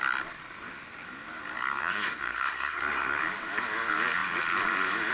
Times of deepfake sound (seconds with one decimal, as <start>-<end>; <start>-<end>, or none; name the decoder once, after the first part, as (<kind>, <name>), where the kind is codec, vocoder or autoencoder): 1.8-3.2 (codec, SNAC)